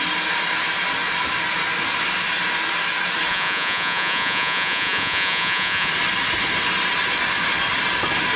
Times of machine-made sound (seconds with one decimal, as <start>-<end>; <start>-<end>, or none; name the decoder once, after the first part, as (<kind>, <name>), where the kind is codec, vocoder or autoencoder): 3.3-5.9 (vocoder, Vocos)